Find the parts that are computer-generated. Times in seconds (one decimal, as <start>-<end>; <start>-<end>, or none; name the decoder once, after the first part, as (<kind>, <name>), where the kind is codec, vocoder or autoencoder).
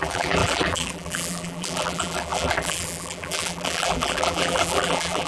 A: 0.0-5.3 (vocoder, BigVGAN v2)